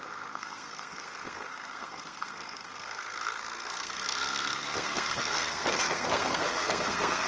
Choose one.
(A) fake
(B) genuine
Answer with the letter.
A